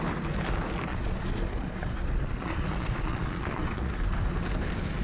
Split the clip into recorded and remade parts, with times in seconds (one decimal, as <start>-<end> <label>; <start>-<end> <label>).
0.0-0.9 recorded; 0.9-3.9 remade; 3.9-5.0 recorded

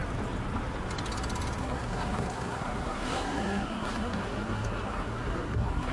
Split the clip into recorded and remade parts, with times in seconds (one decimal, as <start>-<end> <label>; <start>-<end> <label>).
0.0-1.6 recorded; 1.6-5.9 remade

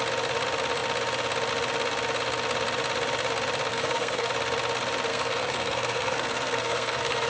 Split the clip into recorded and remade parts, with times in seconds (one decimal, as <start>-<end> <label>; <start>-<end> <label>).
0.0-3.7 recorded; 3.7-4.3 remade; 4.3-5.1 recorded; 5.1-7.3 remade

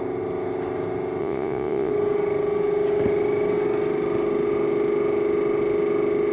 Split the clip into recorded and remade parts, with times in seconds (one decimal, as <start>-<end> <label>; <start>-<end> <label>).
0.0-1.2 recorded; 1.2-1.9 remade; 1.9-6.3 recorded

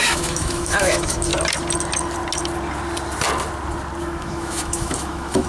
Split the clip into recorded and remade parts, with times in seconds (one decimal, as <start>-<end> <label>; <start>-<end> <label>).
0.0-1.3 remade; 1.3-4.0 recorded; 4.0-5.5 remade

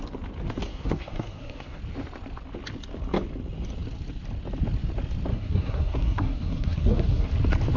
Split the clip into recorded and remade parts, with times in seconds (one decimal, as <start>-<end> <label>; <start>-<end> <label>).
0.0-0.6 recorded; 0.6-1.8 remade; 1.8-5.3 recorded; 5.3-7.3 remade; 7.3-7.8 recorded